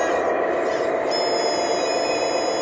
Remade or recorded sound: recorded